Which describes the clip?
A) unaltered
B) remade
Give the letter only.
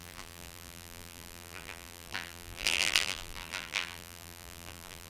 B